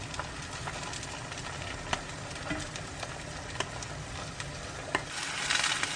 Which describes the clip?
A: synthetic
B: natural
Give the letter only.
B